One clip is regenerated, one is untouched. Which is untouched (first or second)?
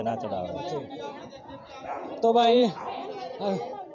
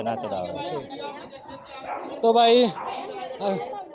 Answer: second